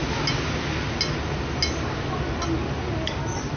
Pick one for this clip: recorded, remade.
recorded